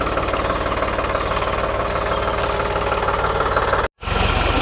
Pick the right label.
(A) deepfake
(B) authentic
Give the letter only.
B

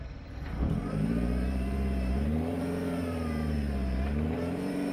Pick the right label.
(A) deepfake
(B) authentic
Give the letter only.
A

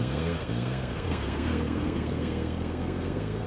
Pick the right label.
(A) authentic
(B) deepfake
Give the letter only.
B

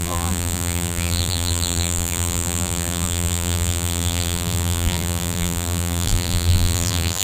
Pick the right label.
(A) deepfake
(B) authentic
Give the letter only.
A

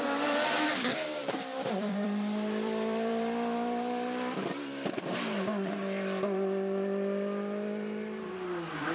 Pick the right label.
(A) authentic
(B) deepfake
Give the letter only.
B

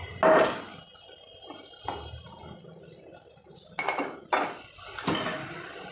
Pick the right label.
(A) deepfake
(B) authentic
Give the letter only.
B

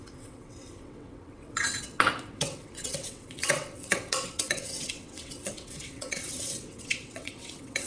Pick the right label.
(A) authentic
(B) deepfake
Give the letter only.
B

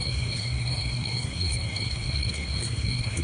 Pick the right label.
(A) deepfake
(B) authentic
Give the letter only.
A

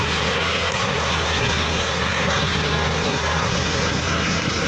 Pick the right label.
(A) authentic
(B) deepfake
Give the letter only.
B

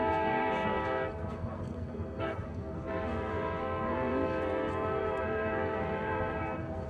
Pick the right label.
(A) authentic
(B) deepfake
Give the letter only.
B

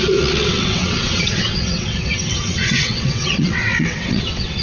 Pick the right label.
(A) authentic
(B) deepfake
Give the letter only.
B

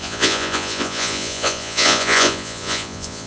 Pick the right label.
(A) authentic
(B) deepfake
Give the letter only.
B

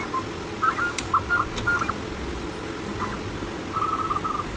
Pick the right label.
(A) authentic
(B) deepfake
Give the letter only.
A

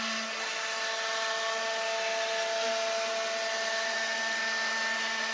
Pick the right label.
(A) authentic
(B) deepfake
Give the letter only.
A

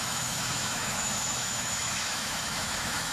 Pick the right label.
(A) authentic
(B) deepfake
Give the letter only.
B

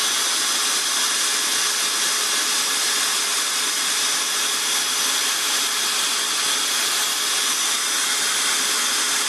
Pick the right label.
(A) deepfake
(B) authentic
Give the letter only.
B